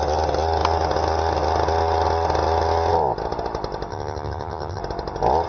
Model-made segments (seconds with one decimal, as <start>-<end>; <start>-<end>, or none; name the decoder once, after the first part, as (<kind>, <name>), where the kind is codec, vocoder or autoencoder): 3.9-4.8 (vocoder, HiFi-GAN)